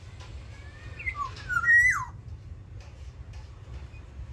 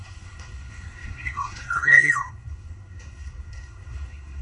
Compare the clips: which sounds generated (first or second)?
second